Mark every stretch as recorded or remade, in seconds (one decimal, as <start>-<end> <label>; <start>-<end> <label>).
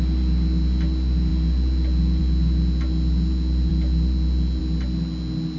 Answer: 0.0-5.6 recorded